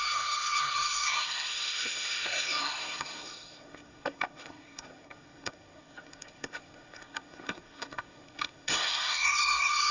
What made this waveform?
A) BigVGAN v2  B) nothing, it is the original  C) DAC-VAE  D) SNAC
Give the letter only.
D